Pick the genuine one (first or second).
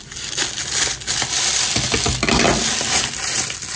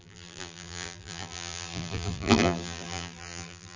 first